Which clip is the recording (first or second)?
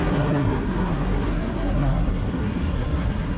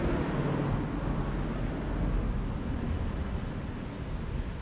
second